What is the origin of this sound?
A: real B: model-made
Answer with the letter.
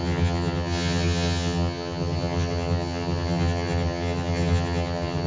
B